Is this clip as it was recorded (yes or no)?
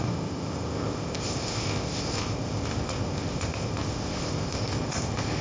no